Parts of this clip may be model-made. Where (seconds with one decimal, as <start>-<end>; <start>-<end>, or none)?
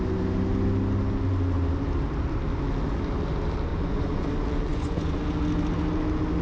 3.7-4.3; 4.7-5.2